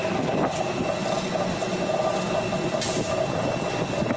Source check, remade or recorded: recorded